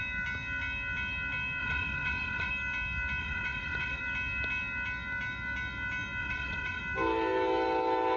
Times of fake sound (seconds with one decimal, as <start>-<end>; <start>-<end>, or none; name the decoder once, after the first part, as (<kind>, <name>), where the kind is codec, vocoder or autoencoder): 1.6-2.5 (vocoder, WaveNeXt); 3.2-4.0; 6.2-6.8